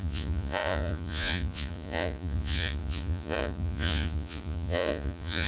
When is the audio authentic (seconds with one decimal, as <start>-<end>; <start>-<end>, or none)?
none

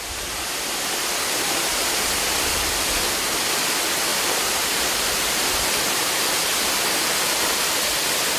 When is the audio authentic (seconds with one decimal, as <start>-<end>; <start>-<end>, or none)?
0.0-4.1; 7.8-8.4

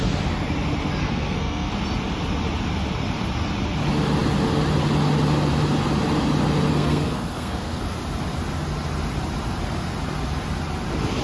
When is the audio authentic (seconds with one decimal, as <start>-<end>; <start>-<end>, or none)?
0.0-1.0; 1.7-6.7; 7.8-11.2

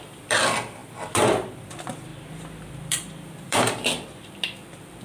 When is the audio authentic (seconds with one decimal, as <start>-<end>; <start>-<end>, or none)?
none